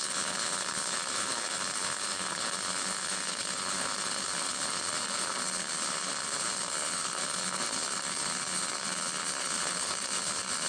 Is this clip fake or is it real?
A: fake